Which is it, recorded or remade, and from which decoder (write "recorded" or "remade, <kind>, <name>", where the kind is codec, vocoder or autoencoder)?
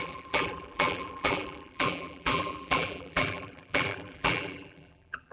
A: remade, vocoder, BigVGAN v2